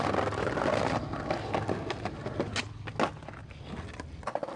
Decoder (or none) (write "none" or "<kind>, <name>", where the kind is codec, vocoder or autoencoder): none